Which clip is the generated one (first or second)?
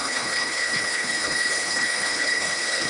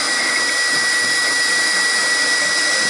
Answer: first